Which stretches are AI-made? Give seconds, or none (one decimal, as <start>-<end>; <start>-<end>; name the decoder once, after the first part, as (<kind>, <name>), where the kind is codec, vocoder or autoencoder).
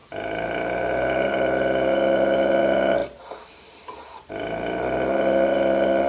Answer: none